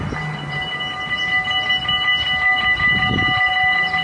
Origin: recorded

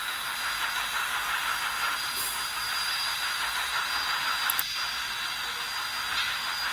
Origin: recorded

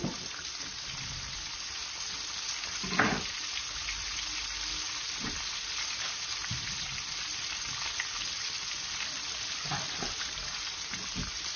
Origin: recorded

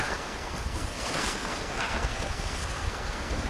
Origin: remade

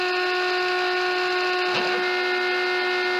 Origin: recorded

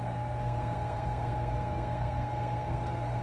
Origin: remade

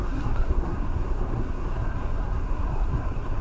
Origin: remade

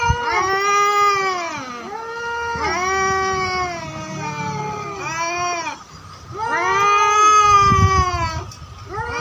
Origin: recorded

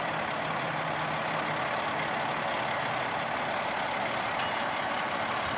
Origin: recorded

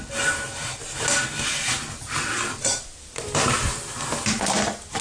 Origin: recorded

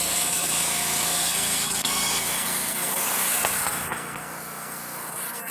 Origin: remade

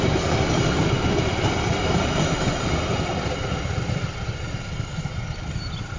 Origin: recorded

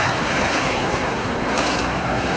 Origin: remade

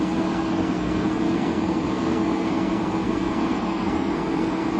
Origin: remade